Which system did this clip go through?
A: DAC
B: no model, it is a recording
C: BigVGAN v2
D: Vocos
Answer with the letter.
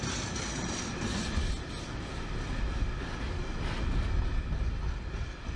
B